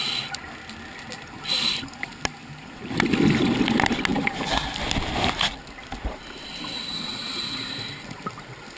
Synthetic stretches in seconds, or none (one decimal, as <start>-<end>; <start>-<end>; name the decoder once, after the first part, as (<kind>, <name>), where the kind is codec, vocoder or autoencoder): none